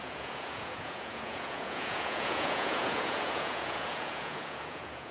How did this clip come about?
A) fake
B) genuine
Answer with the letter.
A